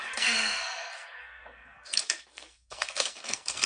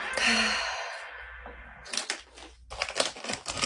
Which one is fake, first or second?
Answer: first